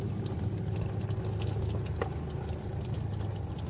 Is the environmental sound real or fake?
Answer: real